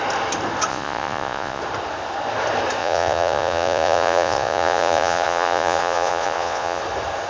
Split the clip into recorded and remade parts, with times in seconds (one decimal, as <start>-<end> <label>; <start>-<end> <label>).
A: 0.0-0.7 recorded; 0.7-1.6 remade; 1.6-2.8 recorded; 2.8-6.8 remade; 6.8-7.3 recorded